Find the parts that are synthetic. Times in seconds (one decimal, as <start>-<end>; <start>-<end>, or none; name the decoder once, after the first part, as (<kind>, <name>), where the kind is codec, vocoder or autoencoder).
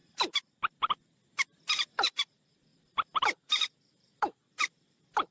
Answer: 1.3-5.3 (vocoder, BigVGAN v2)